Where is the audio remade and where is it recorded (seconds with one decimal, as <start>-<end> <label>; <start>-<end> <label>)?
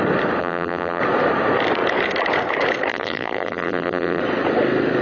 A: 0.0-0.4 recorded; 0.4-1.0 remade; 1.0-2.9 recorded; 2.9-4.2 remade; 4.2-5.0 recorded